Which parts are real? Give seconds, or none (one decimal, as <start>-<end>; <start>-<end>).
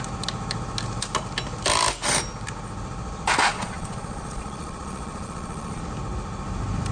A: 0.0-3.5; 5.8-6.9